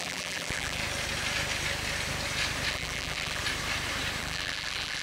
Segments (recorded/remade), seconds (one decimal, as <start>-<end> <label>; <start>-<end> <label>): 0.0-0.8 remade; 0.8-2.7 recorded; 2.7-3.4 remade; 3.4-4.2 recorded; 4.2-5.0 remade